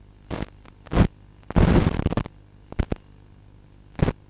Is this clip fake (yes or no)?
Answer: no